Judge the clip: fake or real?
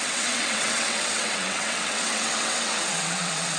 fake